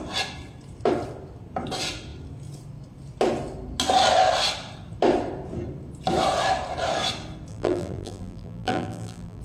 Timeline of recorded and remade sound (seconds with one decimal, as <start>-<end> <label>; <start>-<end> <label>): 0.0-7.5 recorded; 7.5-9.4 remade